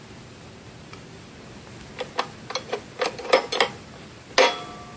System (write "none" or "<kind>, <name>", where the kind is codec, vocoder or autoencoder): none